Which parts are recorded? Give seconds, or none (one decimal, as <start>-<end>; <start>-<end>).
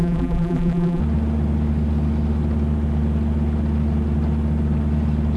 1.0-5.4